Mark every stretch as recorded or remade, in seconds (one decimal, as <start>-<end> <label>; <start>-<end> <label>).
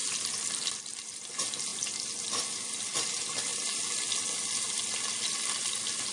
0.0-1.7 recorded; 1.7-2.3 remade; 2.3-6.1 recorded